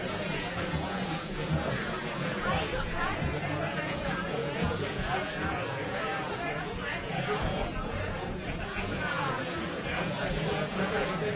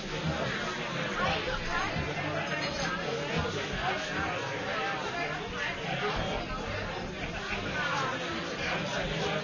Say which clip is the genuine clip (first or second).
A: second